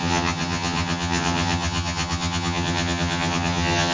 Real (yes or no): no